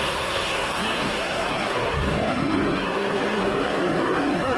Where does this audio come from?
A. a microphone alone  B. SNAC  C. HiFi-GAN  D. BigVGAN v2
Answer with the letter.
B